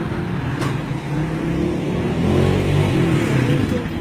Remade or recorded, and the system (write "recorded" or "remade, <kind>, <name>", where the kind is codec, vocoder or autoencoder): recorded